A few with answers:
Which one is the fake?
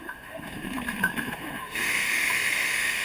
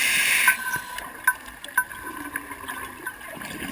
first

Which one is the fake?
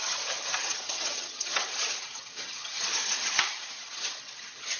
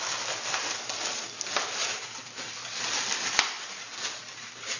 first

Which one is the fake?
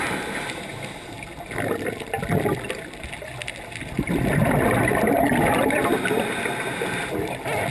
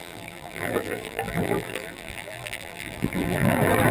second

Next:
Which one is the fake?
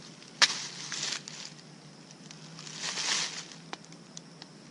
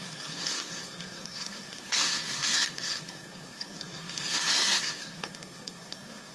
second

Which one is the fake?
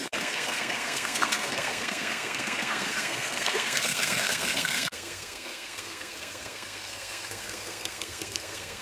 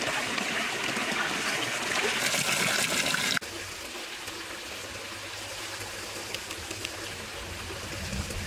first